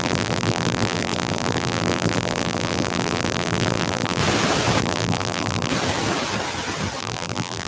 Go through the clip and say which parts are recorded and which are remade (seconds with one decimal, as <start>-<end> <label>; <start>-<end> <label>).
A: 0.0-4.2 remade; 4.2-4.8 recorded; 4.8-5.7 remade; 5.7-7.0 recorded; 7.0-7.7 remade